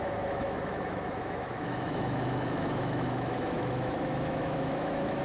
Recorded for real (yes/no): no